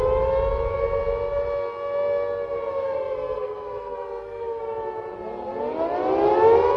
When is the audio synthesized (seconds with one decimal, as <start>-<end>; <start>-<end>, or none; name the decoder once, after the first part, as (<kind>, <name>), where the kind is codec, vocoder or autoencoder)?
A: 2.7-4.6 (codec, SNAC)